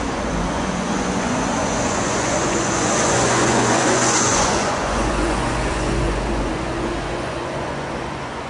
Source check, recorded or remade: remade